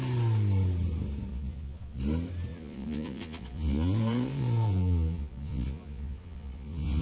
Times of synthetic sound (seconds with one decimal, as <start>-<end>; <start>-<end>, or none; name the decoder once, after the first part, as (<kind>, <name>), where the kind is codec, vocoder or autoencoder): 1.3-2.0 (vocoder, Vocos); 2.5-7.0